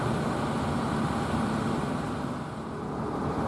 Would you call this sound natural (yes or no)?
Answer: yes